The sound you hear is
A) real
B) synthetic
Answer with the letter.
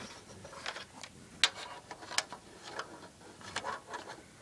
A